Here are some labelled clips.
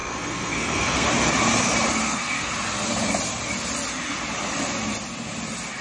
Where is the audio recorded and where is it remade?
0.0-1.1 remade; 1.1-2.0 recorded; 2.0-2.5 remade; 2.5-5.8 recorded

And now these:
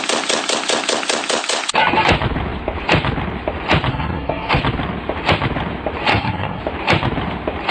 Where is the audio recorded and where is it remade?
0.0-3.9 recorded; 3.9-4.6 remade; 4.6-6.1 recorded; 6.1-6.6 remade; 6.6-7.7 recorded

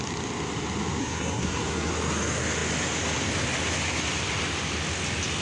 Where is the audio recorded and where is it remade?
0.0-1.0 recorded; 1.0-1.9 remade; 1.9-5.4 recorded

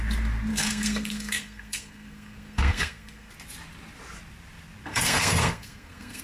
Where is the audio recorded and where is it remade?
0.0-0.5 recorded; 0.5-3.3 remade; 3.3-4.9 recorded; 4.9-6.2 remade

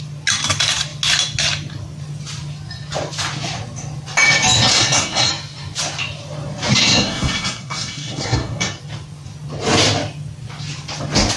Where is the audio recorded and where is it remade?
0.0-4.7 recorded; 4.7-5.3 remade; 5.3-6.8 recorded; 6.8-8.8 remade; 8.8-11.4 recorded